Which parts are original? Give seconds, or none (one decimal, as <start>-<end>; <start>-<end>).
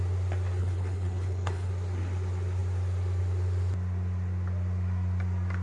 0.0-0.6; 1.7-5.6